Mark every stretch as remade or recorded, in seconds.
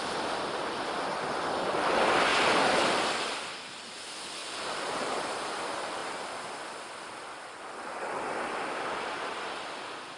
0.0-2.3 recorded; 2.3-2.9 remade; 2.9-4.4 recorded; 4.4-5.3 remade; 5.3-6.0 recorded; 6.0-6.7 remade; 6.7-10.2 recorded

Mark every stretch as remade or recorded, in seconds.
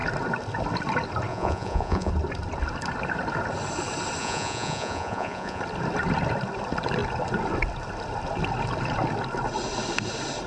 0.0-1.3 recorded; 1.3-2.1 remade; 2.1-4.2 recorded; 4.2-5.6 remade; 5.6-10.5 recorded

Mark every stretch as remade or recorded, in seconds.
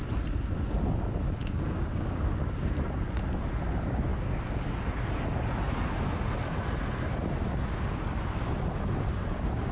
0.0-1.4 recorded; 1.4-2.3 remade; 2.3-9.7 recorded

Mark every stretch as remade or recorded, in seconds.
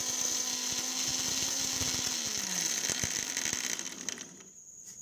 0.0-5.0 recorded